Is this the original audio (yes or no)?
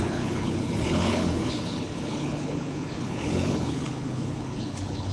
no